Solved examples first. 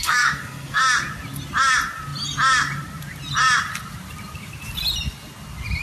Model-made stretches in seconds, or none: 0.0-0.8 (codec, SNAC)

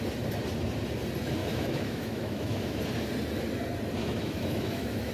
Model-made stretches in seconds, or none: 1.4-2.8 (autoencoder, DAC-VAE); 4.0-5.1

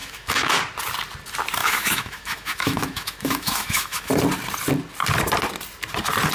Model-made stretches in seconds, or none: 0.0-0.6 (autoencoder, DAC-VAE); 1.6-4.1